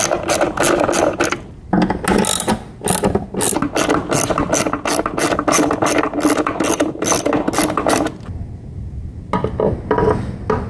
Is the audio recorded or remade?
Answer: recorded